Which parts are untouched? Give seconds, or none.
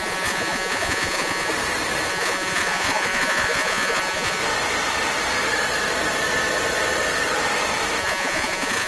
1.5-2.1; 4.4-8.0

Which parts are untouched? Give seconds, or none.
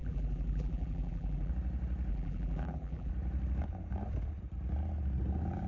1.5-2.1; 3.1-5.7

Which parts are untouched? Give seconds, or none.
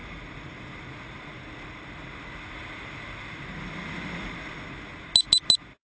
0.0-5.9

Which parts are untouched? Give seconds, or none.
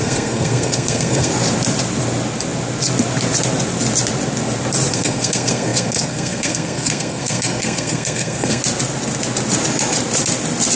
1.3-4.9; 8.6-10.8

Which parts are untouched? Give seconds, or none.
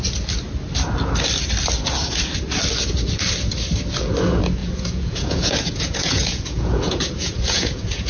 0.0-4.6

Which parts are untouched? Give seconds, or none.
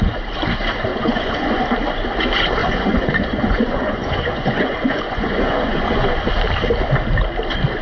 0.0-0.9; 1.6-2.6; 6.3-7.8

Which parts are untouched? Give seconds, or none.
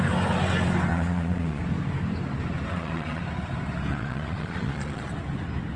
0.0-0.9; 1.6-2.7; 3.2-3.9; 5.1-5.8